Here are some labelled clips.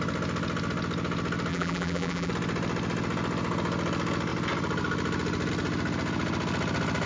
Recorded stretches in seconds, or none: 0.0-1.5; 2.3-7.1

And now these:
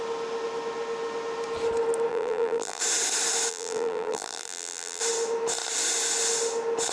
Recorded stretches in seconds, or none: 0.0-2.1; 2.8-3.5; 5.0-6.9

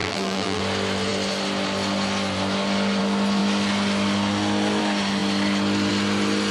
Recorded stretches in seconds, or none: 0.6-6.5

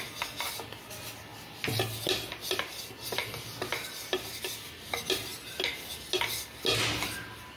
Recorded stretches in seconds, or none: 0.0-7.6

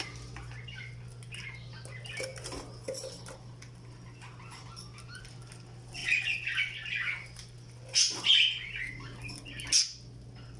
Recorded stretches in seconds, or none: 0.0-10.6

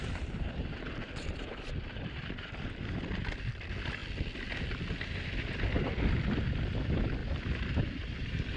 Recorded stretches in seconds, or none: 4.0-4.6